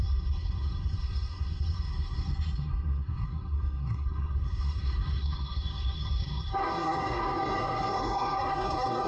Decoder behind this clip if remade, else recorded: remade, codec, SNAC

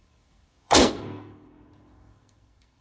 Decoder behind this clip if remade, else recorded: remade, codec, SNAC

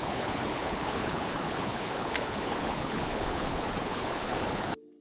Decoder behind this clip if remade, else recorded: remade, codec, HILCodec